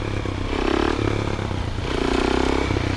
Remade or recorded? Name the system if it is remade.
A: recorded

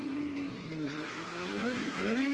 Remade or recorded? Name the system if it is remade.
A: remade, codec, SNAC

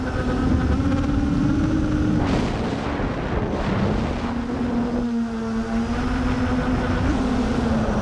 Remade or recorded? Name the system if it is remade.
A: recorded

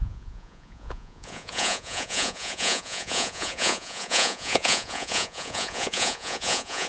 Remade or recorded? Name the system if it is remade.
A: remade, vocoder, Vocos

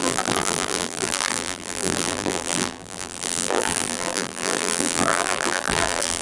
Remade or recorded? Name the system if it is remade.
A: remade, vocoder, BigVGAN v2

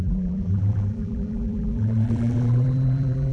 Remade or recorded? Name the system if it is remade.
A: remade, vocoder, BigVGAN v2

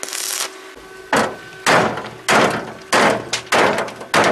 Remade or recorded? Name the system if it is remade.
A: recorded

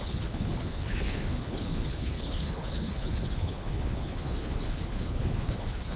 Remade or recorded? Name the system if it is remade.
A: remade, codec, HILCodec